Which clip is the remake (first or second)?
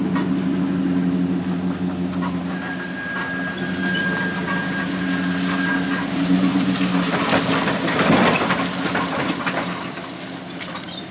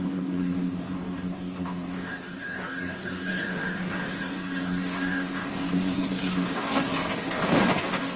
second